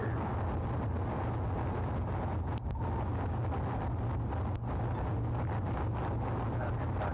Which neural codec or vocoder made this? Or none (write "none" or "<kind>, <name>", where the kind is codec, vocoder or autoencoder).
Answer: none